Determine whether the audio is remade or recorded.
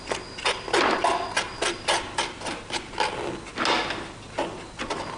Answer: recorded